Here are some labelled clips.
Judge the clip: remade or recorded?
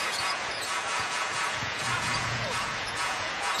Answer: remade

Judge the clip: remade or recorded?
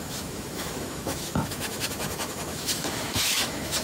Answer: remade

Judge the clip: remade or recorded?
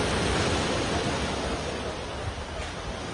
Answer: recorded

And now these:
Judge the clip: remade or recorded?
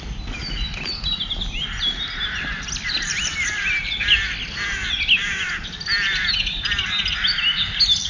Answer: recorded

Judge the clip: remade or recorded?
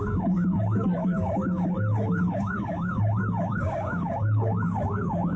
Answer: remade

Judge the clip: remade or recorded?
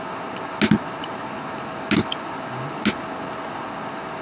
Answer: recorded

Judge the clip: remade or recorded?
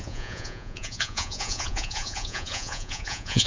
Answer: remade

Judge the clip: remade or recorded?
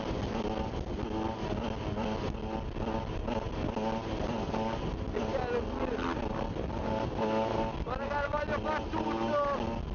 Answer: recorded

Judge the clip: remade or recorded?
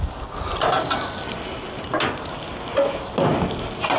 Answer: recorded